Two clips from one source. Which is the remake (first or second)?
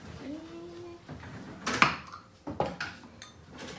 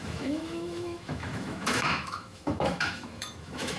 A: second